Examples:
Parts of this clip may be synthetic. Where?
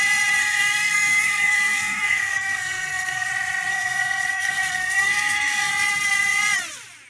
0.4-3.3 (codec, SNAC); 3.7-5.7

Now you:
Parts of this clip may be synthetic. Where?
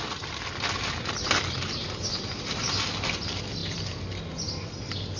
none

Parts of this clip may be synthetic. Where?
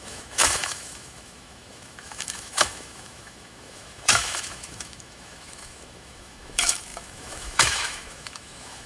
0.0-8.9 (autoencoder, DAC-VAE)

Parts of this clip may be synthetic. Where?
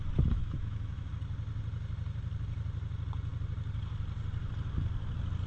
0.4-1.1 (autoencoder, DAC-VAE)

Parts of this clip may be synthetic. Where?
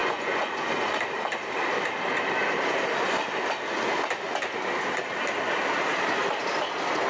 0.0-0.7 (vocoder, Vocos)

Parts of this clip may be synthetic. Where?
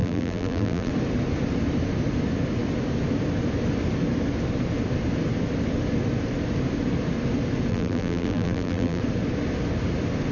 0.0-0.9 (vocoder, BigVGAN v2); 7.7-9.0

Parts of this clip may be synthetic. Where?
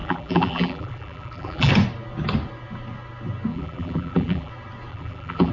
0.0-1.7 (vocoder, BigVGAN v2); 3.5-4.5; 4.9-5.5